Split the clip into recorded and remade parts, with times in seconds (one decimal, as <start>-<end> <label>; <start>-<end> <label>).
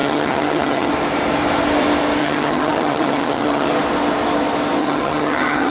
0.0-0.9 remade; 0.9-2.2 recorded; 2.2-3.7 remade; 3.7-4.8 recorded; 4.8-5.7 remade